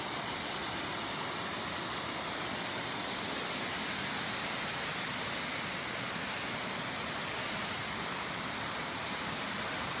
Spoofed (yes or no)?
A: no